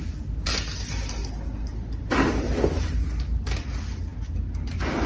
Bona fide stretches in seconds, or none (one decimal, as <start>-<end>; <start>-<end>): 0.0-5.1